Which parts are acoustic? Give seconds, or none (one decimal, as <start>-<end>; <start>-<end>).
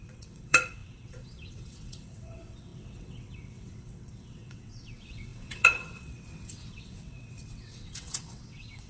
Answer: none